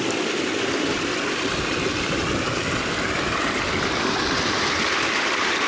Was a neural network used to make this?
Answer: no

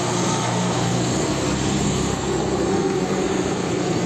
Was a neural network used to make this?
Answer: yes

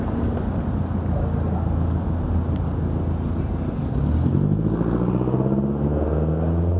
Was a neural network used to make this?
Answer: no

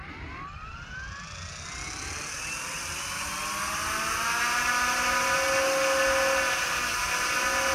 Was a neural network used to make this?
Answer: no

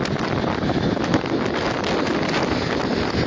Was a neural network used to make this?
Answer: no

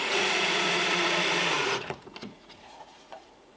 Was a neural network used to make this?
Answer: yes